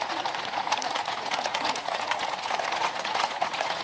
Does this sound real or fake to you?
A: fake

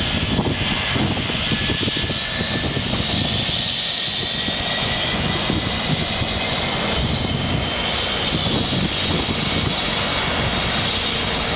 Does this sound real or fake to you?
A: fake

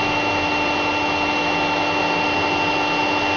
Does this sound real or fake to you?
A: real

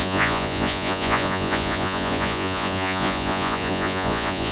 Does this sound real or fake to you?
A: fake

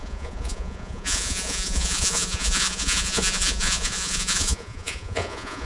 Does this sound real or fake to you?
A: fake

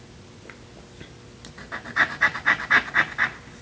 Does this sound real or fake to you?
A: real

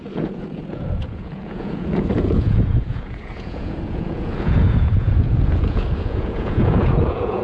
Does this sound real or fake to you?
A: fake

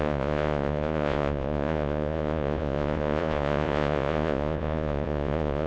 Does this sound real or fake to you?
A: fake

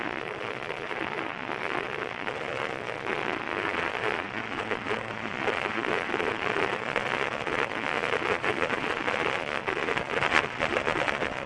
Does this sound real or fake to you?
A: fake